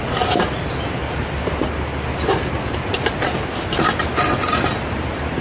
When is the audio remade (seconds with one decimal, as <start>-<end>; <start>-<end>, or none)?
none